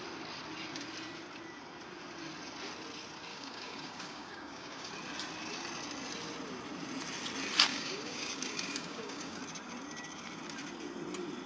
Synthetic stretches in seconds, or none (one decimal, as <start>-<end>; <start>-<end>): 3.3-4.9; 7.7-9.4